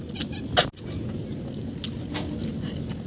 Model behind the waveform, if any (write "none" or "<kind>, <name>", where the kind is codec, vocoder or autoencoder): none